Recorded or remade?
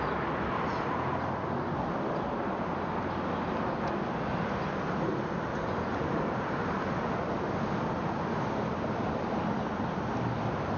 recorded